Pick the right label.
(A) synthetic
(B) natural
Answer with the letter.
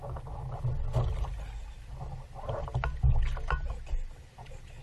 B